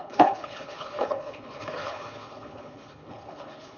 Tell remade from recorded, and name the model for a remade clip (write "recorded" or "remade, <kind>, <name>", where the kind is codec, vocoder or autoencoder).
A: remade, codec, HILCodec